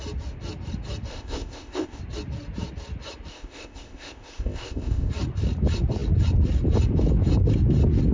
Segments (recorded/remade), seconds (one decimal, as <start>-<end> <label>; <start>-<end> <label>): 0.0-1.1 recorded; 1.1-2.0 remade; 2.0-3.3 recorded; 3.3-5.1 remade; 5.1-8.1 recorded